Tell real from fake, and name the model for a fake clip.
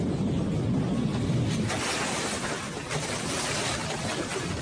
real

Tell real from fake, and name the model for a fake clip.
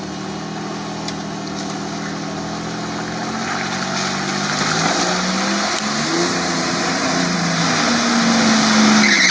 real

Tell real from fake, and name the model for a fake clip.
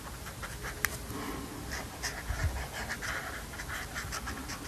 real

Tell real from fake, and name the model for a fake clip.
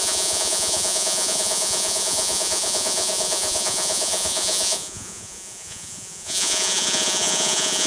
fake, vocoder, Vocos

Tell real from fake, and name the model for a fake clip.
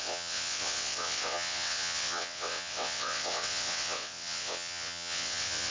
fake, vocoder, WaveNeXt